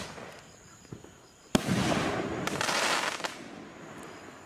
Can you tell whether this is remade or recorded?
recorded